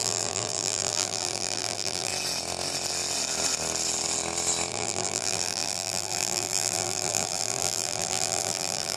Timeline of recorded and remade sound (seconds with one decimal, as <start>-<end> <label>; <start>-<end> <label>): 0.0-2.1 remade; 2.1-4.7 recorded; 4.7-9.0 remade